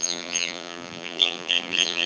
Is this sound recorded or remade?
remade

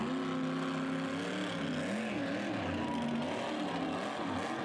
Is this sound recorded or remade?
recorded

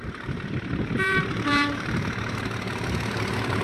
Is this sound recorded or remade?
remade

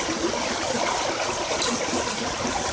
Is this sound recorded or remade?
recorded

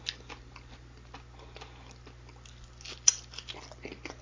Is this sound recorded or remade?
recorded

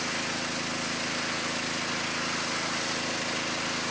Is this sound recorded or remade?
recorded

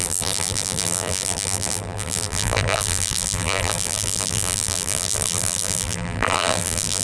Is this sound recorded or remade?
remade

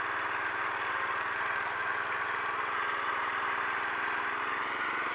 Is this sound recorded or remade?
recorded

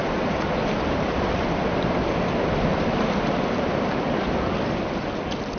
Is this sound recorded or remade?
remade